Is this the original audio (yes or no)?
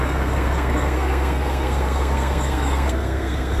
no